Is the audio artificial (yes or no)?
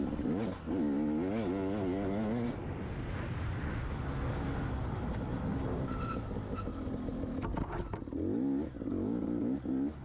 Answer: no